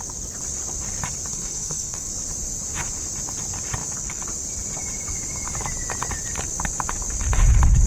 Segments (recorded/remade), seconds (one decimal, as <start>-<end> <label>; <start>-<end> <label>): 0.0-1.3 recorded; 1.3-2.1 remade; 2.1-7.9 recorded